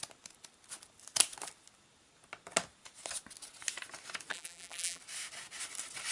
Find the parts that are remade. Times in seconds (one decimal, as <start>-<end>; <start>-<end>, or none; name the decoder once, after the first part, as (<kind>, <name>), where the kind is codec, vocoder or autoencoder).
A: 4.3-5.0 (vocoder, BigVGAN v2)

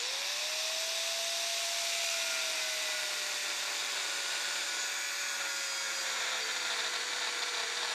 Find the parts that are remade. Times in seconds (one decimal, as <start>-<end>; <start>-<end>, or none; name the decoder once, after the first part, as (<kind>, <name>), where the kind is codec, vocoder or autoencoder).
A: 3.8-4.6 (vocoder, BigVGAN v2)

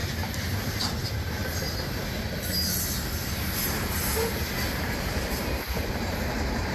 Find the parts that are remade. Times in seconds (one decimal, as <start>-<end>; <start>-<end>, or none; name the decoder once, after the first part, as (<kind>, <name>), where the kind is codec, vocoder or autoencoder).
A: 0.6-1.4 (vocoder, BigVGAN v2); 4.8-6.7

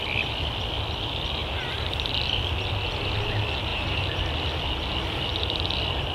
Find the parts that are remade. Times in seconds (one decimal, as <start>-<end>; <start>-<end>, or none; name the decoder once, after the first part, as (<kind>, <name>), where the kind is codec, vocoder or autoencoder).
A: 1.4-2.1 (vocoder, BigVGAN v2); 3.7-4.2